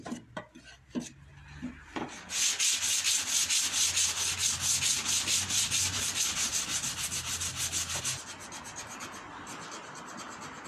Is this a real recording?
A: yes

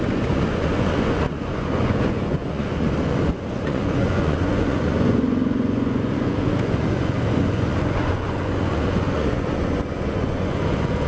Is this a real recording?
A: no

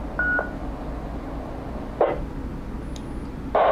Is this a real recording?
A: yes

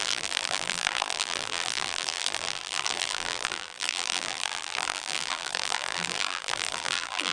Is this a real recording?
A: no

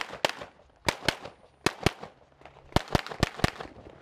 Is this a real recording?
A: yes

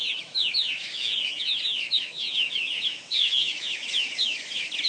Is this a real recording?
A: no